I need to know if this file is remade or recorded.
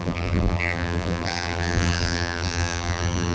remade